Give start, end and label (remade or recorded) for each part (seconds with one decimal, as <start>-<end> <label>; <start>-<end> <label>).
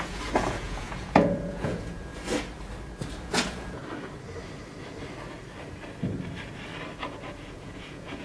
0.0-2.1 remade; 2.1-3.2 recorded; 3.2-3.8 remade; 3.8-7.0 recorded; 7.0-8.2 remade